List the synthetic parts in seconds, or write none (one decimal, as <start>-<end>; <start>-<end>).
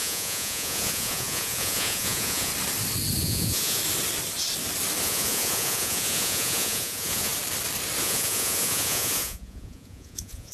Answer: 0.0-2.5; 3.2-3.8; 5.0-7.3; 8.0-10.5